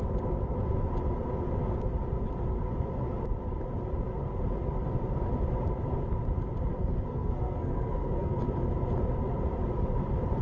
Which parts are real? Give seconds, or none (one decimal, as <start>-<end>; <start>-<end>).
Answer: 0.0-6.7; 8.4-10.4